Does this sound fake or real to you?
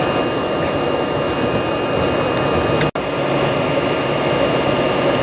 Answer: real